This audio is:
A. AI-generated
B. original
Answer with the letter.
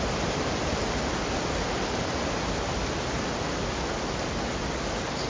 B